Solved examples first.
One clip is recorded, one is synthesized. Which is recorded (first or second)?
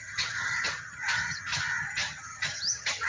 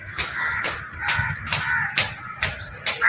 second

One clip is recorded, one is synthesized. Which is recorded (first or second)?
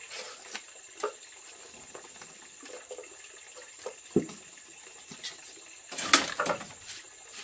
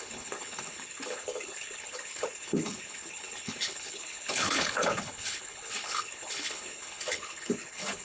first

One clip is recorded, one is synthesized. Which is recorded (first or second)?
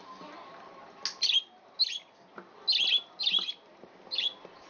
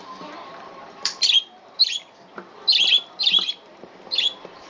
first